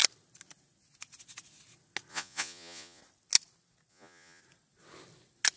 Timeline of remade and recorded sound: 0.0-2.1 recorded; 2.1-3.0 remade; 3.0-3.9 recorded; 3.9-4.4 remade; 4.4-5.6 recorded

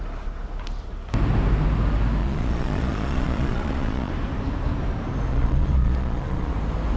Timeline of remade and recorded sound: 0.0-2.2 recorded; 2.2-4.1 remade; 4.1-5.3 recorded; 5.3-6.5 remade; 6.5-7.0 recorded

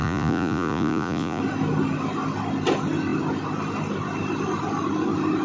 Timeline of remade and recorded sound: 0.0-1.4 remade; 1.4-5.4 recorded

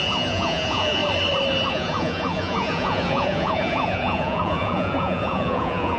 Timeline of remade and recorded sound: 0.0-1.0 remade; 1.0-1.7 recorded; 1.7-6.0 remade

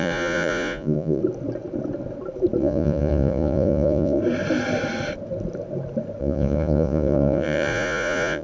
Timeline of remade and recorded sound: 0.0-1.2 remade; 1.2-2.6 recorded; 2.6-4.2 remade; 4.2-6.2 recorded; 6.2-8.4 remade

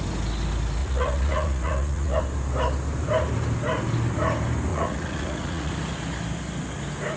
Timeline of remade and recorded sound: 0.0-0.8 recorded; 0.8-2.2 remade; 2.2-4.7 recorded; 4.7-5.7 remade; 5.7-7.2 recorded